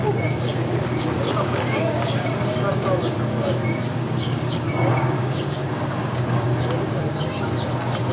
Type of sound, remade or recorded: remade